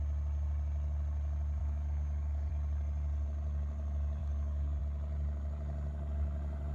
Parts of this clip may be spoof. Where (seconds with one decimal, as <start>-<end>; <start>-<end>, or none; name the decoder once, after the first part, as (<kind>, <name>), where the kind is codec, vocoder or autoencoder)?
1.6-2.5 (codec, DAC); 4.2-4.8